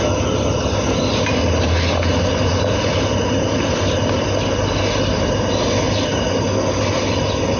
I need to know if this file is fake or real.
real